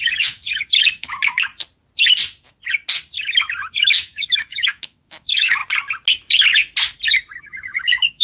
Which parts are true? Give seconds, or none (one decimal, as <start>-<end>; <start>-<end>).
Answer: 1.5-3.7; 5.6-7.4